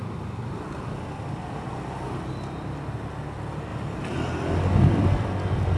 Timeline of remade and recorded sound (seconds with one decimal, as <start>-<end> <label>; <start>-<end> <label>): 0.0-5.8 recorded